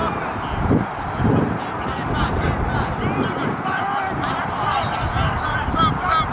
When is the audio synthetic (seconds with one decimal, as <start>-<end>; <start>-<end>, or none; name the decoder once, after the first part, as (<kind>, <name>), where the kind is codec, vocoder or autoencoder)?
none